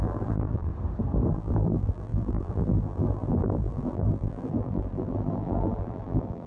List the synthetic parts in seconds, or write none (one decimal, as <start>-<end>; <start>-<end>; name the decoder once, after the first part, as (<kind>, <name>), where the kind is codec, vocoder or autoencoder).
0.0-0.7 (vocoder, BigVGAN v2); 1.3-6.5